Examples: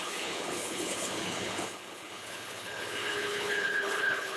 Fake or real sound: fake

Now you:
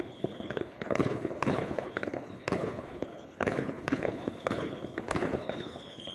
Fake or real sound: fake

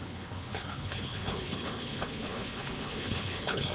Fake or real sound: fake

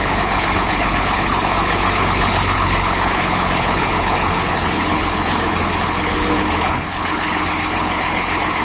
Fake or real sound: fake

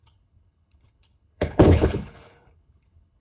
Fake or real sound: fake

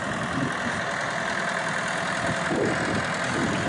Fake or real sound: real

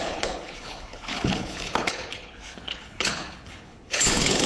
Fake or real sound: fake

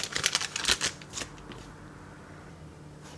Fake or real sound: real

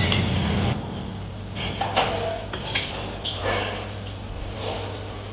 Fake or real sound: real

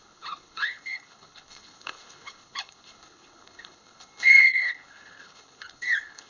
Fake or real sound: fake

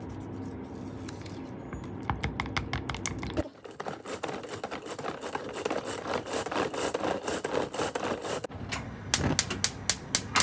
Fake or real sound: real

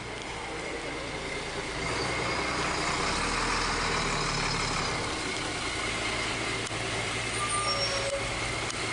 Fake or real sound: real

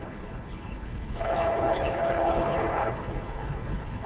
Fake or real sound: fake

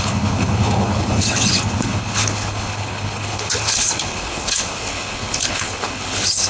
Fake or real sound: fake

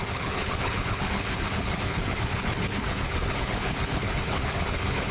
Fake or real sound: fake